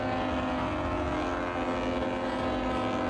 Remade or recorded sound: recorded